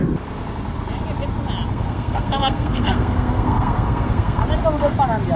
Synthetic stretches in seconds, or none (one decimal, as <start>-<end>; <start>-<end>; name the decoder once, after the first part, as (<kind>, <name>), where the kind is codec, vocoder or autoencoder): 1.7-4.4 (codec, SNAC)